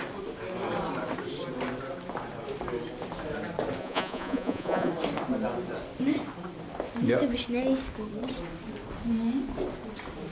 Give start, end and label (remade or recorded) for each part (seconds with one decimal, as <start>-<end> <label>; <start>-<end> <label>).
0.0-3.8 recorded; 3.8-4.9 remade; 4.9-10.3 recorded